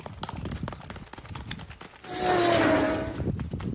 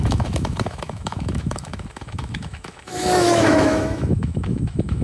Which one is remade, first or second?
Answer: second